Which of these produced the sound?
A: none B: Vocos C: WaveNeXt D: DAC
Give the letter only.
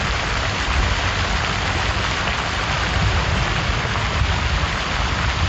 A